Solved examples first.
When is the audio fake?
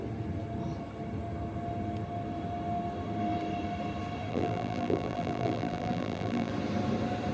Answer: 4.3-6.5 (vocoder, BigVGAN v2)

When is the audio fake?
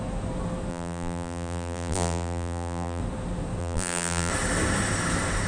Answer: 0.7-3.0 (vocoder, BigVGAN v2); 3.6-4.3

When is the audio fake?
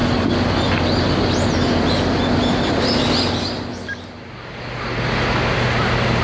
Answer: none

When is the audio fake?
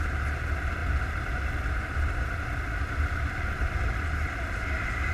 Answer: 0.8-3.9 (vocoder, BigVGAN v2)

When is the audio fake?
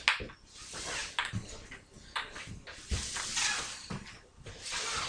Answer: none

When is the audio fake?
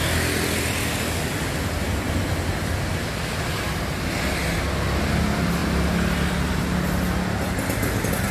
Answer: none